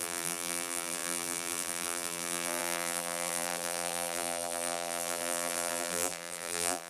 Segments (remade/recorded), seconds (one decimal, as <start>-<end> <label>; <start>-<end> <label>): 0.0-6.9 remade